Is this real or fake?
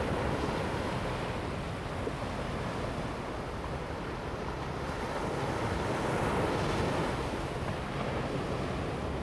real